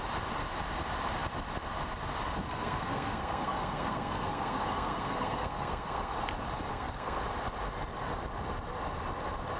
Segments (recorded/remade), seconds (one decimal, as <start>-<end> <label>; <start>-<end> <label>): 0.0-2.4 recorded; 2.4-6.1 remade; 6.1-6.7 recorded; 6.7-7.2 remade; 7.2-9.6 recorded